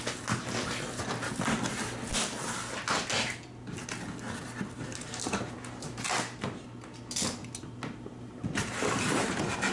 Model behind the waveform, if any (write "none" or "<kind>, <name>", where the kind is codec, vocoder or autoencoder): none